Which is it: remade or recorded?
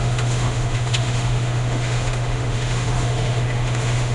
remade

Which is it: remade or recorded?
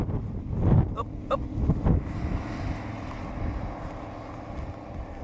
recorded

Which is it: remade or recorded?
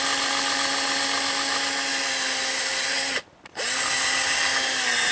recorded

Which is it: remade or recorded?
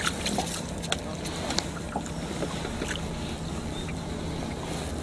recorded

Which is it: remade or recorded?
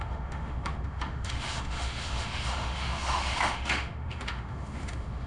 remade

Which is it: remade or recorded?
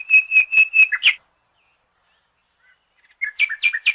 recorded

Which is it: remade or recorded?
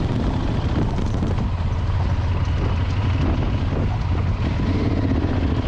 recorded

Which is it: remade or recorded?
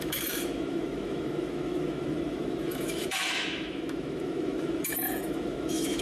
remade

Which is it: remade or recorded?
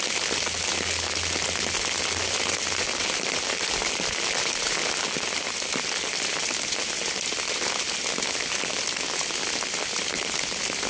recorded